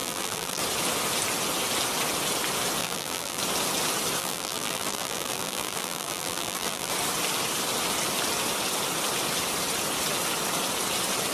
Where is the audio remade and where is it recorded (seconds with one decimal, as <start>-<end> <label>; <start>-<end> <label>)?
0.0-0.6 remade; 0.6-2.8 recorded; 2.8-3.4 remade; 3.4-4.2 recorded; 4.2-6.9 remade; 6.9-11.3 recorded